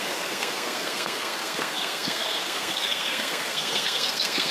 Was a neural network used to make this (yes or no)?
yes